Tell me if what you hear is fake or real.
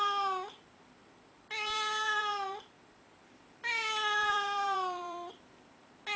fake